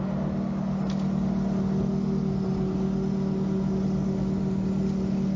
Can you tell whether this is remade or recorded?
recorded